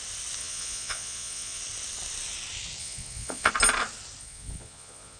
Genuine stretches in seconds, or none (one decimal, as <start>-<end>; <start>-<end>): 0.0-0.4; 1.6-2.8; 3.5-4.2